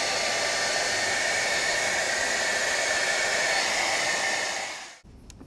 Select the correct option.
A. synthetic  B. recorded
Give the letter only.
B